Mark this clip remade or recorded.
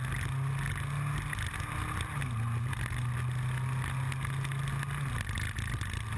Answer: recorded